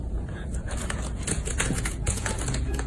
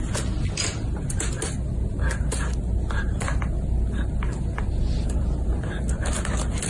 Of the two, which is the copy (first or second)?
first